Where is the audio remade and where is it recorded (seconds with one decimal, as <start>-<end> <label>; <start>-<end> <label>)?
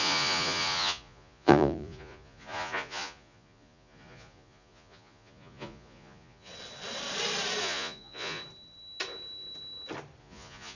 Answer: 0.0-6.5 remade; 6.5-7.6 recorded; 7.6-8.4 remade; 8.4-10.2 recorded; 10.2-10.8 remade